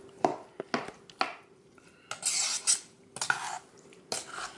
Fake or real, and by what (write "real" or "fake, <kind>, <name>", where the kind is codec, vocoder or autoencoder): real